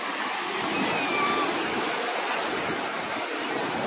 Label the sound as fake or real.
real